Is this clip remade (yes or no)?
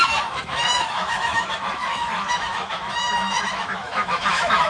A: yes